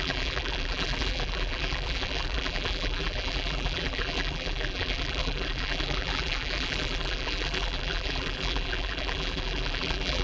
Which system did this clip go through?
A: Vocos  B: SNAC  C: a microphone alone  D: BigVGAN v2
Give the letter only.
D